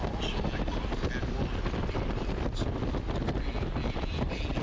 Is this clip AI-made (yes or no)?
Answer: no